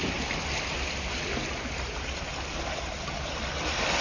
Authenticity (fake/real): real